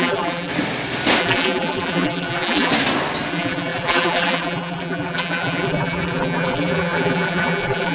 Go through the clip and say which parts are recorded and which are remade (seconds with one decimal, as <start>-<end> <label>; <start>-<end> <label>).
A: 0.0-0.5 remade; 0.5-1.2 recorded; 1.2-2.7 remade; 2.7-3.3 recorded; 3.3-7.9 remade